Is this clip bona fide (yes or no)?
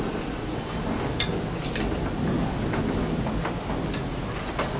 yes